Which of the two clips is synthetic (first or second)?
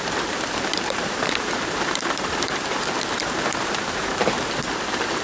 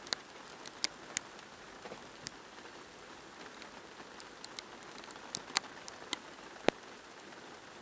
first